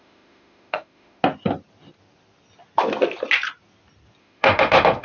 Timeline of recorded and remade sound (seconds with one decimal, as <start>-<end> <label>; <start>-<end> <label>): 0.0-1.2 remade; 1.2-4.2 recorded; 4.2-5.0 remade